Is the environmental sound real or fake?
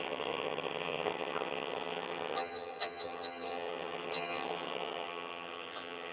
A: fake